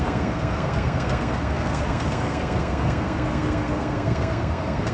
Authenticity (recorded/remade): remade